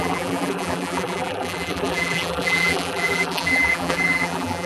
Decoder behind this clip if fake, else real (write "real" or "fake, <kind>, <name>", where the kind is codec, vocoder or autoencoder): fake, vocoder, BigVGAN v2